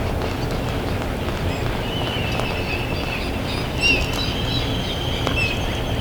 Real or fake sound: real